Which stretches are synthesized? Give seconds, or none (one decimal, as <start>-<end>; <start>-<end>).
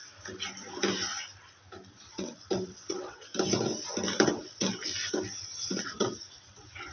1.9-3.3; 4.3-4.8; 5.6-6.9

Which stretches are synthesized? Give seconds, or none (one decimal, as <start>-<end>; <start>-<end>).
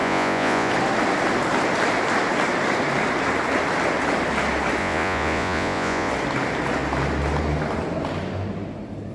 0.0-0.7; 4.8-6.1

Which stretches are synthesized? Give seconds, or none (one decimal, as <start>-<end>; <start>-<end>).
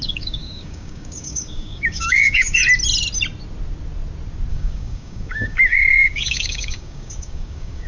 0.0-2.6; 4.5-7.9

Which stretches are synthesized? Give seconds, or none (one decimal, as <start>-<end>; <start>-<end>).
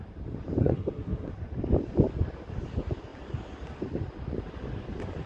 0.6-1.3